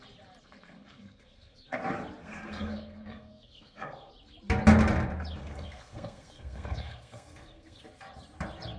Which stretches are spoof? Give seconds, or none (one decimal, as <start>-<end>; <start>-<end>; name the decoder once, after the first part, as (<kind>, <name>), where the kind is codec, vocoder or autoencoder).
0.4-1.8 (codec, SNAC); 2.2-4.1; 5.4-7.8